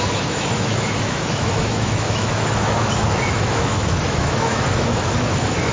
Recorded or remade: remade